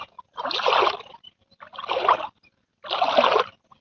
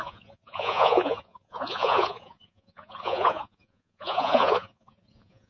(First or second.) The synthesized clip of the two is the second